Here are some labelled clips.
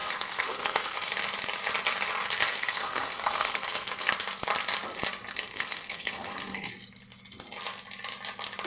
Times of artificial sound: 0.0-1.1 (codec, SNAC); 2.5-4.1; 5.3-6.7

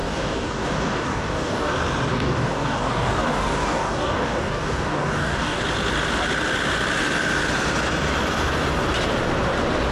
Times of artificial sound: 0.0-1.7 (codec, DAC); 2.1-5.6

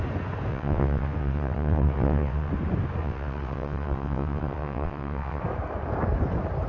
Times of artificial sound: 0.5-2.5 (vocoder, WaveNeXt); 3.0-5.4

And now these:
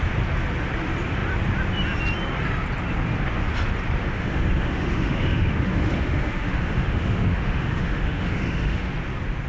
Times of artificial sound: 4.0-8.9 (autoencoder, DAC-VAE)